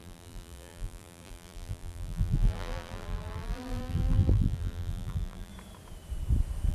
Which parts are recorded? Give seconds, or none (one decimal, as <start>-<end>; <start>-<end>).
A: 5.5-6.7